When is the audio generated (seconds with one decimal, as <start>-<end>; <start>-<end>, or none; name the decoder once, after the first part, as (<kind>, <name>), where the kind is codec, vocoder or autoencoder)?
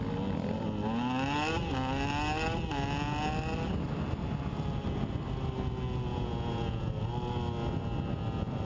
6.1-6.9 (vocoder, Vocos)